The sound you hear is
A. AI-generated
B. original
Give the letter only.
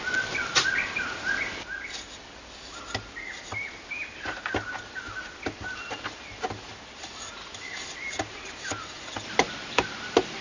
B